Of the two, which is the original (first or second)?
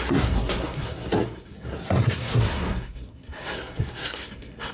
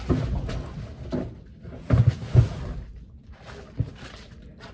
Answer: second